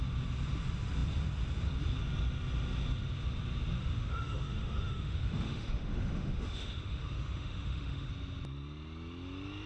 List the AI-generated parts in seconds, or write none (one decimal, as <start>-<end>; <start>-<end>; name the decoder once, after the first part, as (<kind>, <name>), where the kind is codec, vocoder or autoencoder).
3.8-8.1 (autoencoder, DAC-VAE)